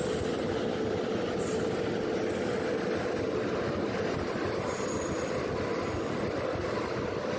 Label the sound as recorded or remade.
recorded